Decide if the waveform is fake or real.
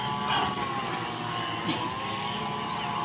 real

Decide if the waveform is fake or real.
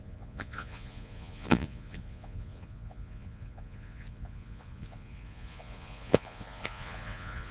fake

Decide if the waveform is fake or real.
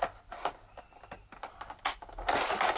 real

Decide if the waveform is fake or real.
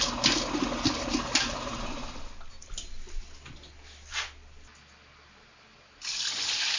real